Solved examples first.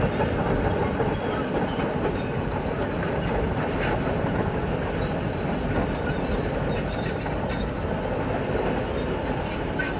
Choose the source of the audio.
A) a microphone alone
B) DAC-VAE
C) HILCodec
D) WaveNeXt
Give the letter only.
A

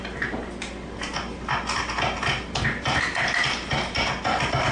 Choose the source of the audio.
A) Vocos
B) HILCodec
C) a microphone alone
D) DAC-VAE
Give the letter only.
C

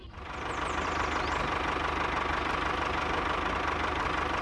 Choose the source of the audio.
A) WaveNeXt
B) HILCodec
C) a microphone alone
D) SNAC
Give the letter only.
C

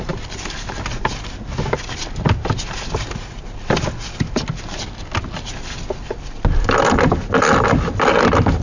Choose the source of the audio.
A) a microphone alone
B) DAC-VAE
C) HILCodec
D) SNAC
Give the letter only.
A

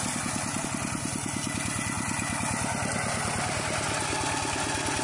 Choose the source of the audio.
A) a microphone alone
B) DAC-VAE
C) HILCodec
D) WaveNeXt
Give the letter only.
A